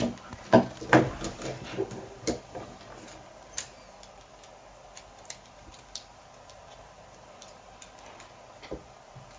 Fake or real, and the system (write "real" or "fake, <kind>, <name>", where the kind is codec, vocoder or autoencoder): real